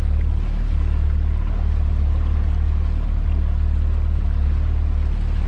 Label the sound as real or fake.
real